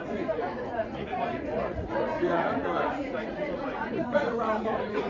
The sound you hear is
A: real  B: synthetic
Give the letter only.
B